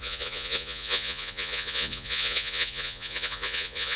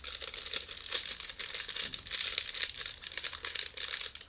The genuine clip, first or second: second